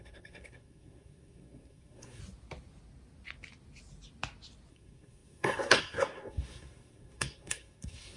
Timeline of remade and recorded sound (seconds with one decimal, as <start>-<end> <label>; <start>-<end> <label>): 0.0-2.2 remade; 2.2-4.7 recorded; 4.7-8.2 remade